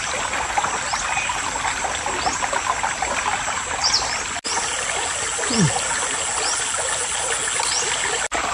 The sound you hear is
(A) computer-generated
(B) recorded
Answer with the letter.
B